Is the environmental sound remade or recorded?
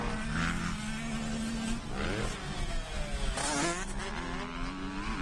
recorded